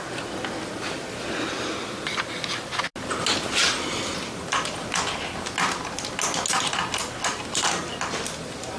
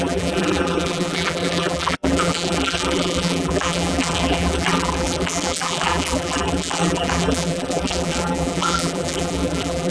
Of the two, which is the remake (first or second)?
second